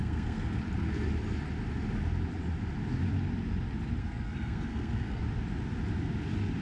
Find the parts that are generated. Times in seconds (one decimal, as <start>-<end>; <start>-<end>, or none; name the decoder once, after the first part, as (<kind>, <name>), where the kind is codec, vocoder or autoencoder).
0.0-0.6 (codec, SNAC); 4.0-5.2